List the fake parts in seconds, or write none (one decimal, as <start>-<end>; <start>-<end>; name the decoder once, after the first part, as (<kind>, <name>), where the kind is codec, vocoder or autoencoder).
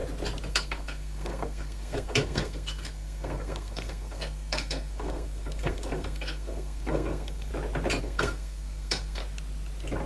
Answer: 0.5-7.5 (codec, SNAC); 8.0-9.2